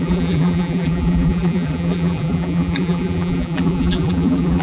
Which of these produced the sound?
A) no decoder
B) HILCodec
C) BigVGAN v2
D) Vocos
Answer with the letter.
C